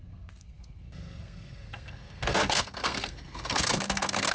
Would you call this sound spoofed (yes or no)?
yes